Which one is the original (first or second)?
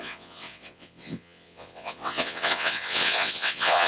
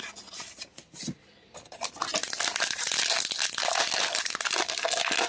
second